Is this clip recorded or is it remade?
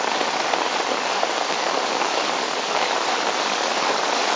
remade